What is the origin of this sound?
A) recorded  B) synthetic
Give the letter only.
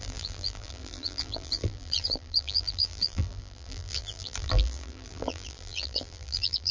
B